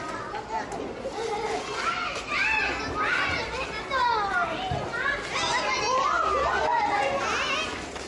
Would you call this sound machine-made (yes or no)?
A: no